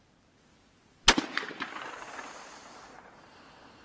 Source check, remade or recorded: recorded